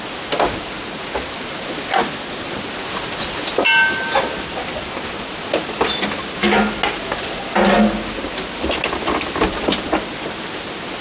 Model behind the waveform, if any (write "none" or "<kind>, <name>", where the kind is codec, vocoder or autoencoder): none